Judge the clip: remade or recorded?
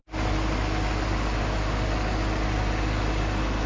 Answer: recorded